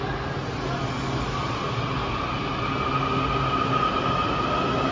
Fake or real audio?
real